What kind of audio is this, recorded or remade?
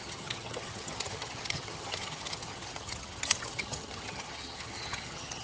remade